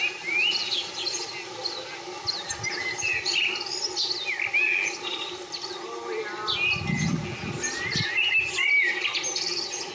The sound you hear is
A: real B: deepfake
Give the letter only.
A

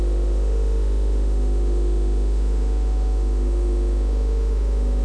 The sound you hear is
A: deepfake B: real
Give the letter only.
A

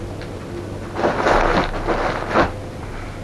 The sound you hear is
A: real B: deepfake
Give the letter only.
A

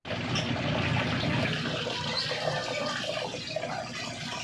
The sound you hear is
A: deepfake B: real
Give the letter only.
B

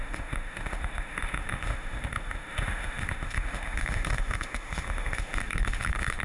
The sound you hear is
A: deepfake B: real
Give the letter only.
A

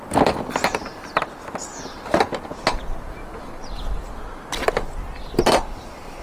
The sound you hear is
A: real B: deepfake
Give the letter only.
A